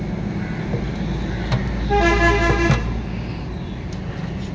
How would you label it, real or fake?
real